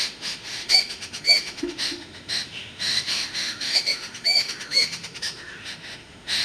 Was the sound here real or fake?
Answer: fake